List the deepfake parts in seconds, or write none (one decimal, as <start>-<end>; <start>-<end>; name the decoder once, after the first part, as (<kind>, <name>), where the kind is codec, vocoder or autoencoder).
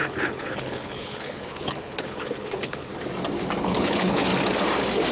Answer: 0.0-2.9 (codec, HILCodec); 3.6-4.3